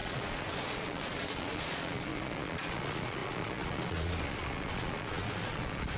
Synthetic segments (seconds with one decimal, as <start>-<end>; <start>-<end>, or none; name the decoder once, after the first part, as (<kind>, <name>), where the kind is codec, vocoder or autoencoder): 0.0-6.0 (vocoder, Vocos)